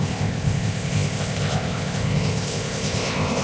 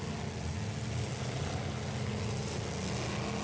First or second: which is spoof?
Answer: first